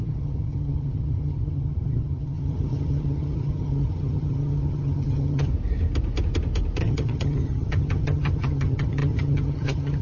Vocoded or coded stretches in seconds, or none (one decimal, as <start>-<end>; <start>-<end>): 0.0-5.5; 6.8-10.0